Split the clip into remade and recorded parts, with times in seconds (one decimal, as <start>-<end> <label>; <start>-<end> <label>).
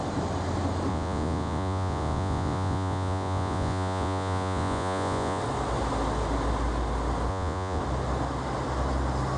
0.0-0.9 recorded; 0.9-5.4 remade; 5.4-7.3 recorded; 7.3-7.8 remade; 7.8-9.4 recorded